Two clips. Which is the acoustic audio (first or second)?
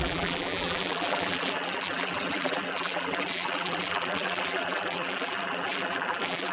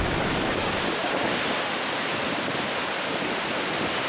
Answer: second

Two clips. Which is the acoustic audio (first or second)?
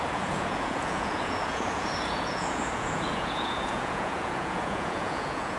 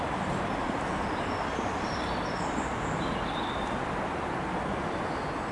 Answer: second